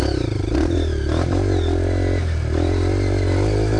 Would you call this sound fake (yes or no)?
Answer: no